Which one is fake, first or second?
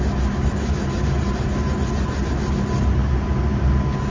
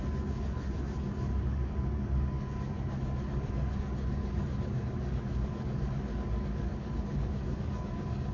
second